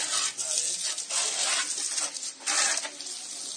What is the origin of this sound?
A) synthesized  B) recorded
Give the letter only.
B